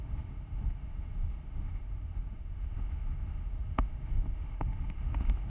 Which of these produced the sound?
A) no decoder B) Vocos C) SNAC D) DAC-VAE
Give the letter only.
D